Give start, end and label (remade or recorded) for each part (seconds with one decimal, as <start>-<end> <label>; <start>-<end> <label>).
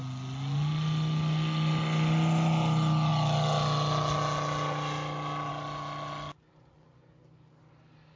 0.0-8.2 recorded